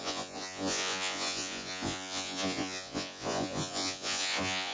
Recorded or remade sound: remade